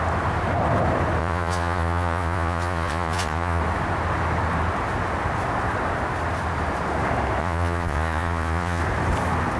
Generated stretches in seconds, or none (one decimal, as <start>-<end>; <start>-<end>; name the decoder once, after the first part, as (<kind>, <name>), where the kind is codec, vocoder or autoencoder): 1.2-3.6 (vocoder, Vocos); 7.4-8.8